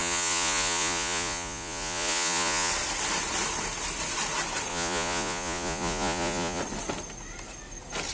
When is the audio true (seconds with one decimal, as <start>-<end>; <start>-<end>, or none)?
2.7-4.7; 6.6-8.1

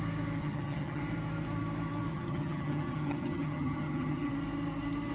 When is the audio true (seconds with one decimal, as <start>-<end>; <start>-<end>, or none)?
0.0-0.4; 1.0-2.1; 4.3-5.1